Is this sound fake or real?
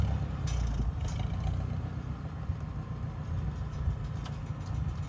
real